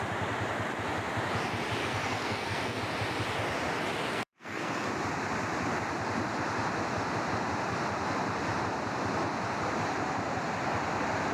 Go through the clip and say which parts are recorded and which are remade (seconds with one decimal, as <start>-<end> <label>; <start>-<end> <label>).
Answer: 0.0-1.8 recorded; 1.8-2.8 remade; 2.8-4.1 recorded; 4.1-4.9 remade; 4.9-11.3 recorded